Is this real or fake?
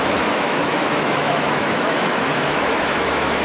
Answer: fake